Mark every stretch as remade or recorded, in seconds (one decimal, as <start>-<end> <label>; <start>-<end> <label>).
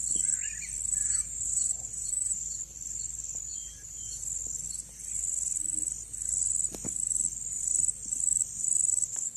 0.0-1.0 recorded; 1.0-2.6 remade; 2.6-3.5 recorded; 3.5-4.2 remade; 4.2-9.4 recorded